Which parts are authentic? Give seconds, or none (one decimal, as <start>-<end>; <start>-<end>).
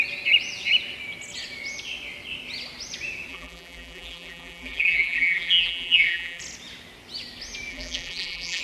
0.0-3.3; 6.4-7.7